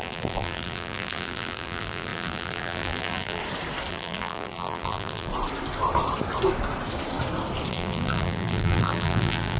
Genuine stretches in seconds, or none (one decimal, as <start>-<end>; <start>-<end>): 3.4-3.9; 5.3-7.7